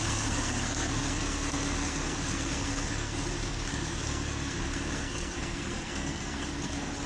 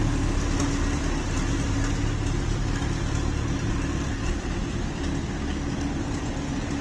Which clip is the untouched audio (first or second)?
second